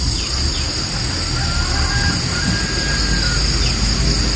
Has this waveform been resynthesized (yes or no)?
no